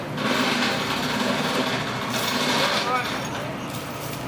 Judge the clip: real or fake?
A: real